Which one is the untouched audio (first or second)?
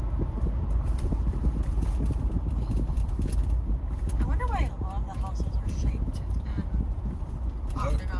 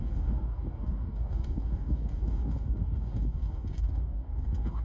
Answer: first